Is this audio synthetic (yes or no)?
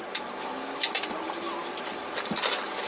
yes